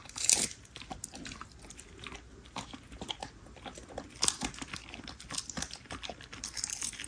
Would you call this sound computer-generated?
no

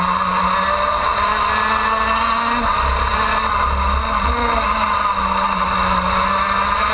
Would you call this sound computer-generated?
no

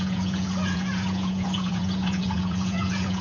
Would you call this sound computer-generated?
yes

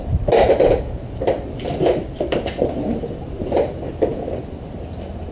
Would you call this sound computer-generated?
no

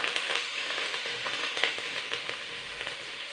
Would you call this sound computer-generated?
yes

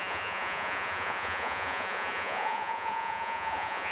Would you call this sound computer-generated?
yes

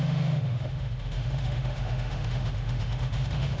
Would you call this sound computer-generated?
yes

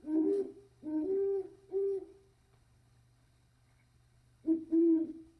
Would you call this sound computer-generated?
yes